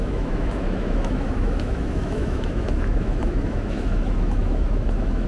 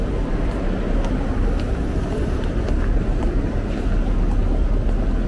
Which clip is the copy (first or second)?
first